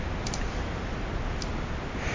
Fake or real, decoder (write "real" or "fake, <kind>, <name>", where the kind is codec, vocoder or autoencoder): real